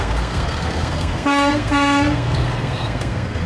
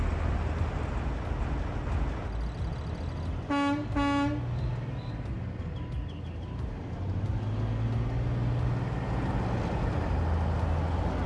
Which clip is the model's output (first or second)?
first